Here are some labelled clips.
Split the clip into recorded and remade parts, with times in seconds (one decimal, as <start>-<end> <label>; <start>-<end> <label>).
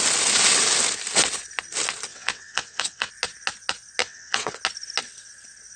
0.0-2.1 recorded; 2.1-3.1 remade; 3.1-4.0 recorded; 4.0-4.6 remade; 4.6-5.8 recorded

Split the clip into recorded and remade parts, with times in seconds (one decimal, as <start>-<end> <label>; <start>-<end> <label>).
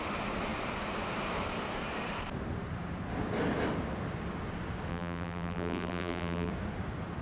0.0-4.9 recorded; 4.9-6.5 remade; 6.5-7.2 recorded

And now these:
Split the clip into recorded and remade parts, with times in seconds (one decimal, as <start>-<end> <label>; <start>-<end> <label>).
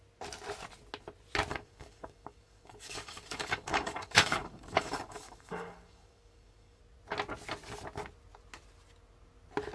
0.0-1.5 recorded; 1.5-6.8 remade; 6.8-9.7 recorded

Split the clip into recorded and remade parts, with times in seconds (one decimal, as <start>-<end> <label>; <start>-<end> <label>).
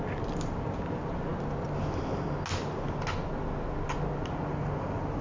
0.0-5.2 recorded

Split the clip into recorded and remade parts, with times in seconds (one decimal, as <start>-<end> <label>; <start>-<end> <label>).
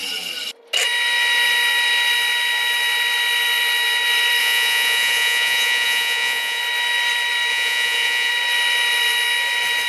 0.0-4.4 recorded; 4.4-6.6 remade; 6.6-7.5 recorded; 7.5-8.3 remade; 8.3-9.9 recorded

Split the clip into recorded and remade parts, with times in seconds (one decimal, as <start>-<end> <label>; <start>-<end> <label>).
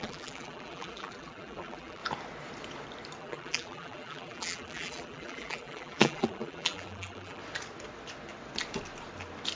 0.0-2.0 remade; 2.0-3.2 recorded; 3.2-7.4 remade; 7.4-9.6 recorded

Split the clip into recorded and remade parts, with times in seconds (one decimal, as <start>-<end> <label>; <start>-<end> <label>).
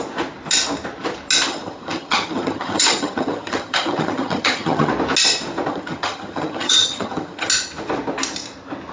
0.0-1.5 recorded; 1.5-4.9 remade; 4.9-5.7 recorded; 5.7-7.5 remade; 7.5-8.9 recorded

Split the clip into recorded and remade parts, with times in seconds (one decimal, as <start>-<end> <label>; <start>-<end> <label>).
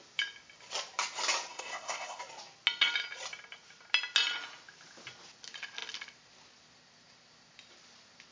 0.0-1.5 recorded; 1.5-2.2 remade; 2.2-8.3 recorded